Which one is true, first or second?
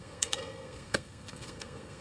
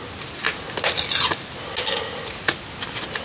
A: second